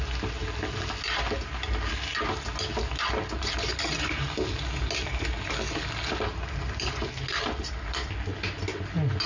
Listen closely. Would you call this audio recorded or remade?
recorded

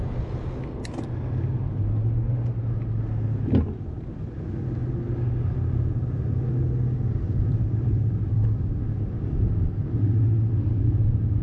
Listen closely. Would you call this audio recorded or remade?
recorded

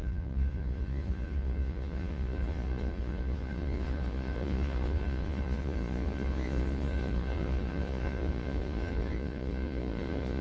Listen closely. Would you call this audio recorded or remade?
remade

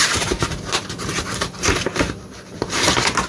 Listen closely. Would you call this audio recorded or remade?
recorded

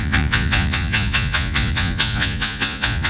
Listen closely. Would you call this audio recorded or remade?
remade